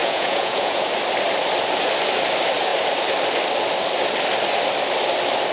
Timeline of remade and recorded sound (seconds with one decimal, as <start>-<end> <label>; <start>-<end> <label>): 0.0-0.9 remade; 0.9-5.5 recorded